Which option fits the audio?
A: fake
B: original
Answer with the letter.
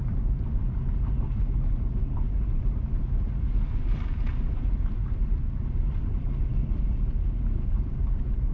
A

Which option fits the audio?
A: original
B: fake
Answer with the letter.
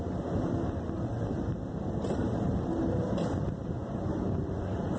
B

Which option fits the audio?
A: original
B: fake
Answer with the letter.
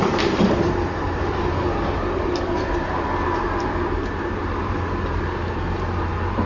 B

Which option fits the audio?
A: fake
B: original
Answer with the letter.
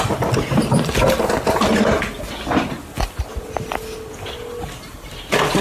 B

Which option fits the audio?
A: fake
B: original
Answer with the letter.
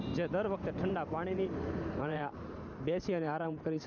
A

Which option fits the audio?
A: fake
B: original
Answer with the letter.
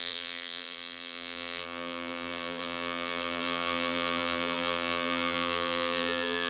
A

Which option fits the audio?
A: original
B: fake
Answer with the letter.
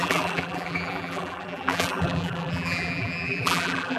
B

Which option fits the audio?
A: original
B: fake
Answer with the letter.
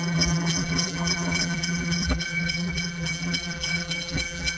B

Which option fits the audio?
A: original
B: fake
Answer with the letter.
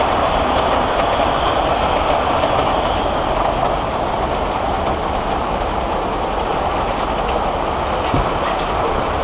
A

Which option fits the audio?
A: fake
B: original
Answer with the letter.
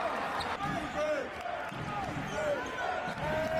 B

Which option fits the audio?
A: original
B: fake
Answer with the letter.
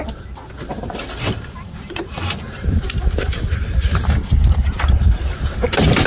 B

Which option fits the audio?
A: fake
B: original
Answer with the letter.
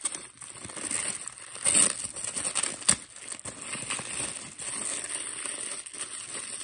B